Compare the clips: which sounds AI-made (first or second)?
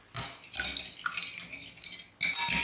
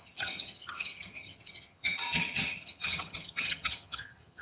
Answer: second